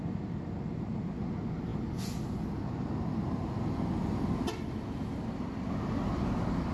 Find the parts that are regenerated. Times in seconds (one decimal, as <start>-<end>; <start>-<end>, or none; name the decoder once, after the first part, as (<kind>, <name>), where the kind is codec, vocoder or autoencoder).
none